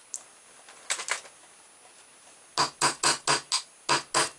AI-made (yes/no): no